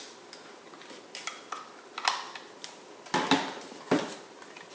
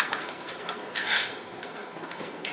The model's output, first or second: second